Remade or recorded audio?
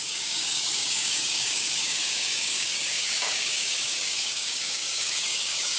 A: remade